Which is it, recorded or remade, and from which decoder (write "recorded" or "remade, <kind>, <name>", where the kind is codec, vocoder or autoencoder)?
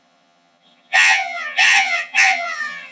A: remade, vocoder, HiFi-GAN